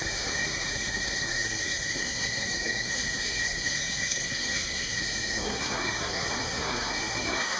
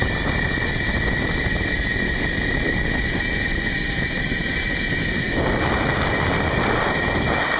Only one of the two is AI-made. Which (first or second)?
first